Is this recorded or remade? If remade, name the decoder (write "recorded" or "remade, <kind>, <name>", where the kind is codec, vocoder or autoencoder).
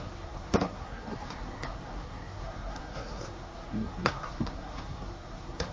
remade, codec, SNAC